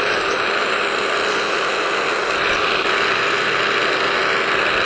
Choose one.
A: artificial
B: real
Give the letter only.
B